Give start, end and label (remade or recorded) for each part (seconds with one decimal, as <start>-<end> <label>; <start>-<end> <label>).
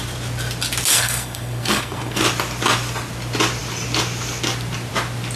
0.0-0.9 recorded; 0.9-2.2 remade; 2.2-5.4 recorded